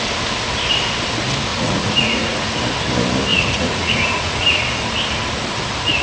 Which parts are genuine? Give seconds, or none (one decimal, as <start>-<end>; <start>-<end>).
0.0-1.5; 2.6-3.3; 4.6-6.0